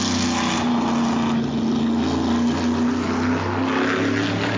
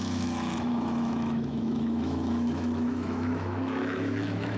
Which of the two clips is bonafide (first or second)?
first